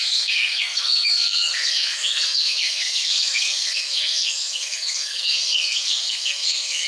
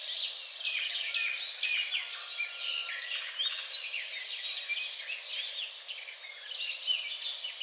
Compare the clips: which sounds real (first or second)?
second